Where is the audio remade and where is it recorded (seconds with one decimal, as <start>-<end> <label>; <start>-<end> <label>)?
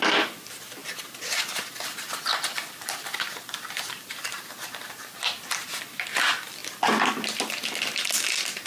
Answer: 0.0-8.7 recorded